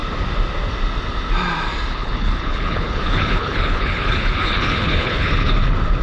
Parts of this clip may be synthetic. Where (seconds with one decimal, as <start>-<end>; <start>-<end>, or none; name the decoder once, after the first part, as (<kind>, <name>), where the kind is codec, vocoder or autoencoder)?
1.9-5.5 (codec, HILCodec)